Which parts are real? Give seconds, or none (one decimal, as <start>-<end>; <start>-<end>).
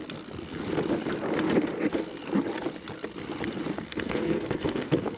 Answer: 0.0-3.7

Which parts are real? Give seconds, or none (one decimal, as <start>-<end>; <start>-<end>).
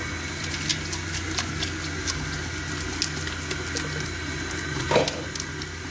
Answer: 0.0-5.9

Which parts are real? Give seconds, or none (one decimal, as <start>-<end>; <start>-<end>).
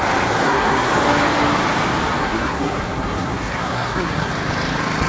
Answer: 0.0-0.4; 0.9-2.2; 4.3-5.1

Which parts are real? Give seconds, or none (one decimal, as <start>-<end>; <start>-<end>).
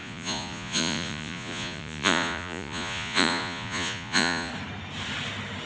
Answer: 4.5-5.7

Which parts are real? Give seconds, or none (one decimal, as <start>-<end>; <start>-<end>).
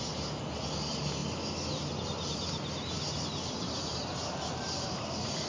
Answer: 0.0-5.5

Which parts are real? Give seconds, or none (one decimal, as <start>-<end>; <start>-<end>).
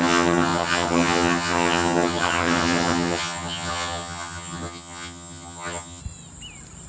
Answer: 6.0-6.9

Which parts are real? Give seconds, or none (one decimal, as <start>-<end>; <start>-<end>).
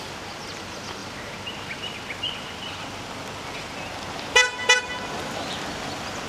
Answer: 0.0-6.3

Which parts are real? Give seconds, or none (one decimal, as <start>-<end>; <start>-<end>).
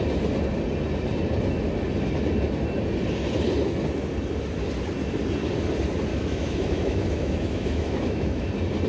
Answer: 0.0-6.1; 8.5-8.9